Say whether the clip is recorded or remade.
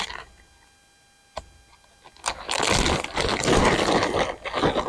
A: recorded